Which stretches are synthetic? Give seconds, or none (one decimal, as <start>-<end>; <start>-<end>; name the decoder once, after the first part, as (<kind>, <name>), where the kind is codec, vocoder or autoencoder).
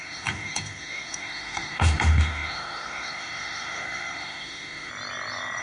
0.0-4.9 (autoencoder, DAC-VAE)